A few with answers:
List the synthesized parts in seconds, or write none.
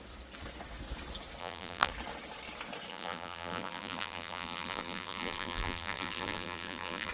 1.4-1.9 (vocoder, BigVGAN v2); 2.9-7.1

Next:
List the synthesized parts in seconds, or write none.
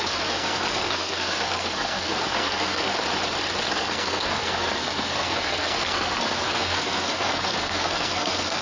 0.0-2.9 (codec, SNAC); 3.7-8.6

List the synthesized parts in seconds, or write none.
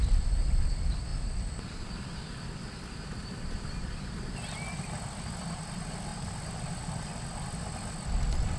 none